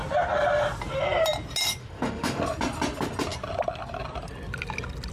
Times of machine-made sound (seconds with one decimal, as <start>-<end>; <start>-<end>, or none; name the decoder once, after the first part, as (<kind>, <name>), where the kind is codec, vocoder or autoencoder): 1.8-2.4 (autoencoder, DAC-VAE)